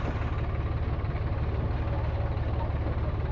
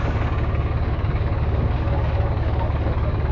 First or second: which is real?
first